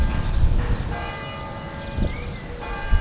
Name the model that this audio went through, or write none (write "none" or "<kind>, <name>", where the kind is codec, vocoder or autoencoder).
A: none